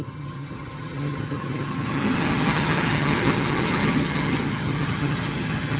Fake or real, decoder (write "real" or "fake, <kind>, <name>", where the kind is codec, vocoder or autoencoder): fake, vocoder, HiFi-GAN